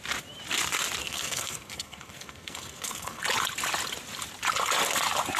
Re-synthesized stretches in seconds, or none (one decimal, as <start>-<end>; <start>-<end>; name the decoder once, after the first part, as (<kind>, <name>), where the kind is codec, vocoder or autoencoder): 1.0-3.2 (codec, SNAC)